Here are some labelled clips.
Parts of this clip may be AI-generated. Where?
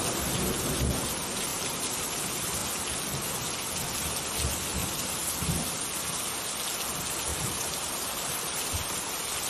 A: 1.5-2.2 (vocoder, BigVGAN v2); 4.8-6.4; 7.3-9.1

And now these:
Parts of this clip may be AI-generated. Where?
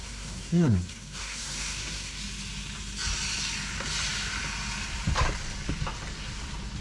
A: 0.0-2.2 (codec, SNAC)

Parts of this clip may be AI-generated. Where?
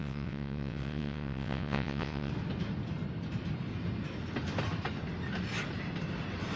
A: 0.0-2.3 (vocoder, WaveNeXt)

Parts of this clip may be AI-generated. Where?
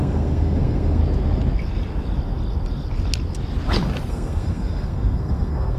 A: 0.0-1.0 (codec, SNAC); 4.1-5.8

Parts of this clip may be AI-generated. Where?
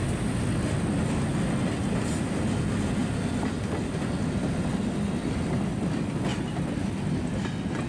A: none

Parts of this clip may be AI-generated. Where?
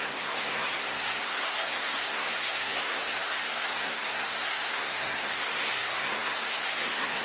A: 0.0-7.2 (codec, SNAC)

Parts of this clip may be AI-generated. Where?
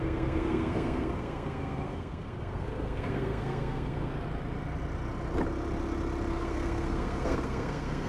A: 0.0-4.1 (codec, SNAC); 6.3-8.1